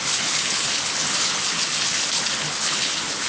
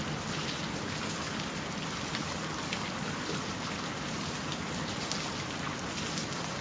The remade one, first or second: first